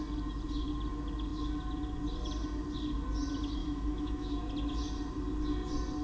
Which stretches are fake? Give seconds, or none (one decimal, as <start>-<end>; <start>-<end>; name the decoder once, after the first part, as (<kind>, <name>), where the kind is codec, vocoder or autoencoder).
3.6-4.4 (autoencoder, DAC-VAE)